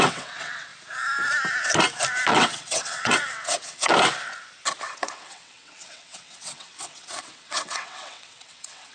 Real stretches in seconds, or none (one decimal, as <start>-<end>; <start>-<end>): 0.7-2.3; 3.9-4.9